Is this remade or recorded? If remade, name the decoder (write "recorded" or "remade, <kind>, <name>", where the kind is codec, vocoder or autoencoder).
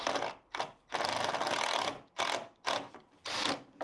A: recorded